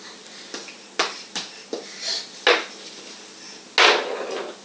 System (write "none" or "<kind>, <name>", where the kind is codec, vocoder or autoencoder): none